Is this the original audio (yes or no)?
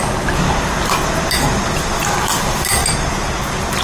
yes